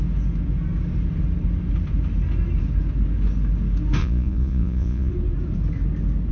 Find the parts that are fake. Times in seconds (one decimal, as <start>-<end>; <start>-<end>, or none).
4.0-5.1